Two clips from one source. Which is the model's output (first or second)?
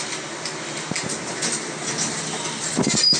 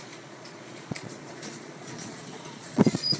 second